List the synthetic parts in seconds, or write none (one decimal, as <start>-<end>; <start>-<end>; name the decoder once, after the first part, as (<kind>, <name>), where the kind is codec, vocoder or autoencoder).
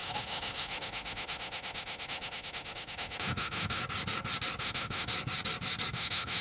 0.0-3.8 (autoencoder, DAC-VAE); 4.6-5.1; 5.9-6.4